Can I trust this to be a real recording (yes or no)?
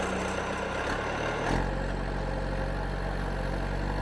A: yes